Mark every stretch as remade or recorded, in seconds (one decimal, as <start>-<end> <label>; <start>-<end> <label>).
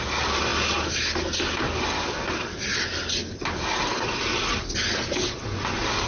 0.0-6.1 recorded